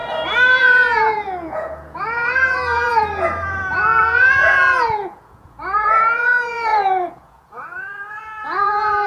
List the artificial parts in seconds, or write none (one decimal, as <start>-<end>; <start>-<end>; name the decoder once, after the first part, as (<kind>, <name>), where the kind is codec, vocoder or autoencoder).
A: 0.6-2.9 (vocoder, Vocos); 4.0-9.1